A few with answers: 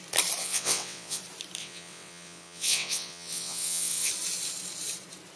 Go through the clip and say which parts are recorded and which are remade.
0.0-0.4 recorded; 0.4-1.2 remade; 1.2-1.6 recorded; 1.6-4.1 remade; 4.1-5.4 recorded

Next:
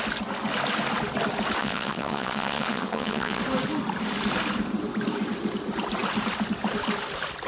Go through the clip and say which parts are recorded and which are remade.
0.0-1.6 recorded; 1.6-3.4 remade; 3.4-7.5 recorded

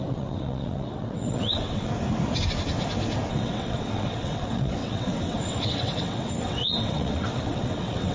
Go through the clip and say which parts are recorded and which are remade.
0.0-1.9 remade; 1.9-3.3 recorded; 3.3-8.1 remade